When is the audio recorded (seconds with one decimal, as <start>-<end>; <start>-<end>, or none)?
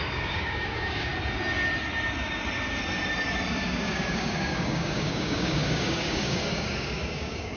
1.1-3.5